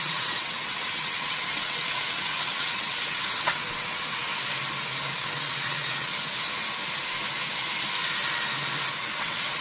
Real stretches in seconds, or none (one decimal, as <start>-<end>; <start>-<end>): 4.3-5.2; 6.1-9.0